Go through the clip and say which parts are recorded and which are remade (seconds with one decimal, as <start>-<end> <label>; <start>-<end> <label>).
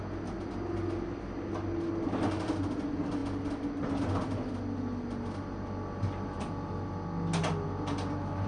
0.0-8.5 recorded